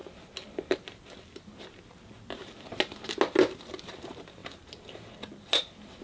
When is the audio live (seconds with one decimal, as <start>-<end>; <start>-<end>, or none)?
0.0-6.0

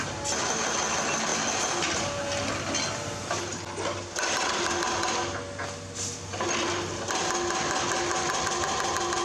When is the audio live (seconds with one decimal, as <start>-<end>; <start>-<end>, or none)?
0.0-9.2

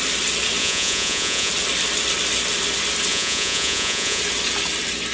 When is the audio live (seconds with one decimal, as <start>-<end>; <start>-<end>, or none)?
0.0-0.6; 1.5-3.1; 4.2-5.1

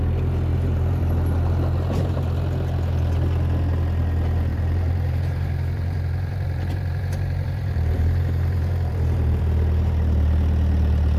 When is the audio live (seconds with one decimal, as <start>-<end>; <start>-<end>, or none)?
0.0-0.5; 1.0-4.5; 9.4-11.2

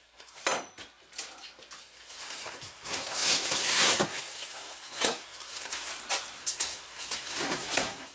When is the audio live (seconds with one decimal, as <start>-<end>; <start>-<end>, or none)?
0.4-1.8; 5.9-6.4